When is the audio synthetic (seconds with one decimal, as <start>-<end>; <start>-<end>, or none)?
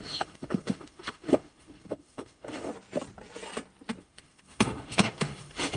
0.0-2.7; 4.0-5.8